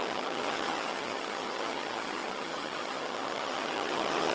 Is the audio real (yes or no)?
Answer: no